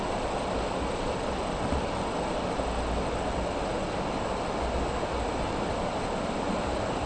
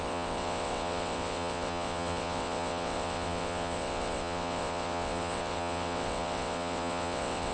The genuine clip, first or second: first